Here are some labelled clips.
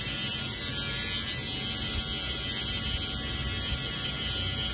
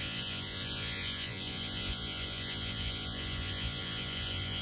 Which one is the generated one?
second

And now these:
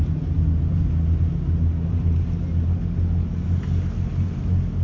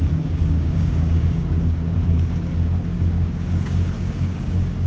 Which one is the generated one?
second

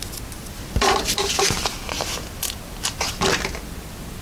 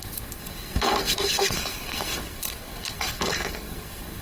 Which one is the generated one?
second